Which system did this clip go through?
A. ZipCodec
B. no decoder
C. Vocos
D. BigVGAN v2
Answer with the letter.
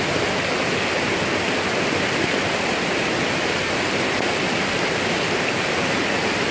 B